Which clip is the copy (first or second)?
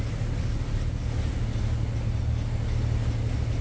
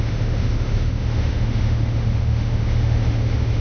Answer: second